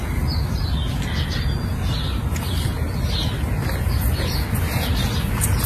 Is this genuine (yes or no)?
yes